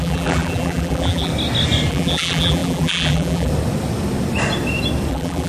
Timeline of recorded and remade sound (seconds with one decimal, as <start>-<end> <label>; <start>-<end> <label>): 0.0-1.3 remade; 1.3-1.9 recorded; 1.9-3.5 remade; 3.5-5.1 recorded; 5.1-5.5 remade